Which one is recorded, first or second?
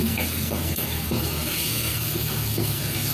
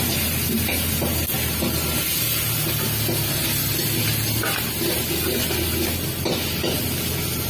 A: second